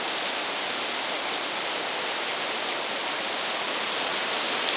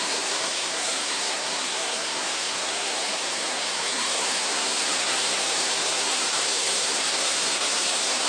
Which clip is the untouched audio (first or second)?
first